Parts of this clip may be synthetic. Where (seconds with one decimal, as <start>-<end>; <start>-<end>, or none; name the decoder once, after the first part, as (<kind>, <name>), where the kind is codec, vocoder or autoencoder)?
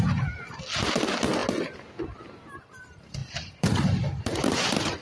3.2-5.0 (vocoder, BigVGAN v2)